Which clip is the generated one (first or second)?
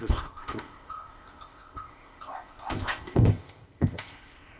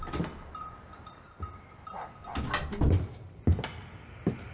first